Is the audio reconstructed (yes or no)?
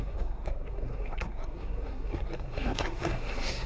yes